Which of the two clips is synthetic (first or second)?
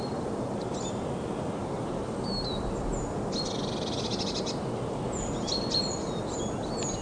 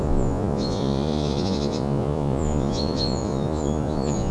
second